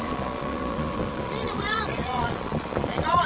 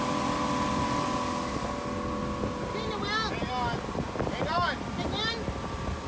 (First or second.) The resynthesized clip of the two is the first